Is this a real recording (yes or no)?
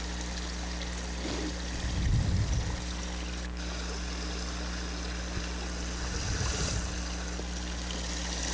yes